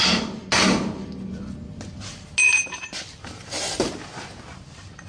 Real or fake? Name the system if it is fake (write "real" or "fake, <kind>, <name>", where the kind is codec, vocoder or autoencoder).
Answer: real